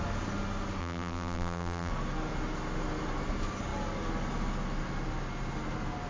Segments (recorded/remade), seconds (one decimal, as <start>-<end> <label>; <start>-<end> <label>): 0.0-0.8 recorded; 0.8-1.9 remade; 1.9-6.1 recorded